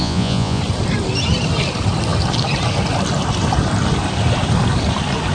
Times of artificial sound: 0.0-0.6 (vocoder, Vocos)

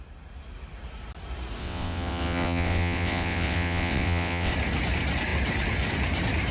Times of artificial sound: 1.6-4.5 (vocoder, WaveNeXt)

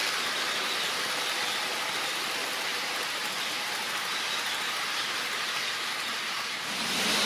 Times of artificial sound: 2.7-7.3 (vocoder, BigVGAN v2)

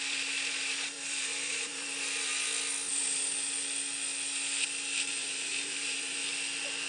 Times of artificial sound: 0.0-2.3 (vocoder, BigVGAN v2); 2.9-3.3; 5.1-6.2